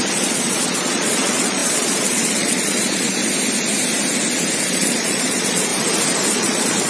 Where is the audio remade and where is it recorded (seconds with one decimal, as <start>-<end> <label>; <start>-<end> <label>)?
0.0-3.2 remade; 3.2-4.6 recorded; 4.6-5.7 remade; 5.7-6.3 recorded; 6.3-6.9 remade